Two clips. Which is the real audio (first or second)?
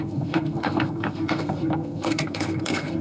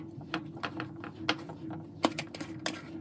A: second